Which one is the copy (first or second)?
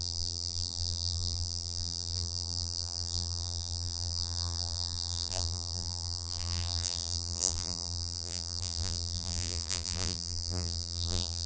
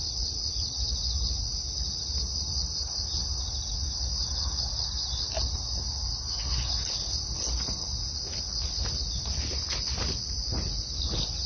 first